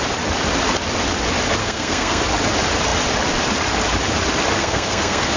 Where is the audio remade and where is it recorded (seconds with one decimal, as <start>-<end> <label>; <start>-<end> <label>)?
0.0-1.6 recorded; 1.6-2.2 remade; 2.2-4.6 recorded; 4.6-5.4 remade